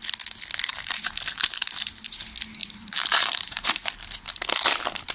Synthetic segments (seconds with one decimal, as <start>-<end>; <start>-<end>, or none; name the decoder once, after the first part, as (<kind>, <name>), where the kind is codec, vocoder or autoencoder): 0.7-1.7 (vocoder, BigVGAN v2); 2.6-4.0